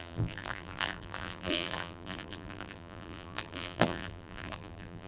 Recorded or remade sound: remade